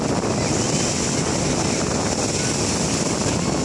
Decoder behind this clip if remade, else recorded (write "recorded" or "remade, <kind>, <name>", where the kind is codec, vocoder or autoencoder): recorded